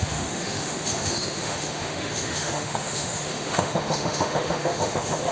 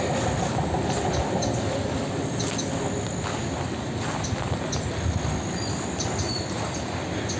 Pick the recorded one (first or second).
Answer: second